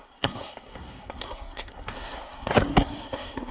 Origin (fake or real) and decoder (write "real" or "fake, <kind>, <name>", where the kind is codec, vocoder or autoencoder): fake, codec, SNAC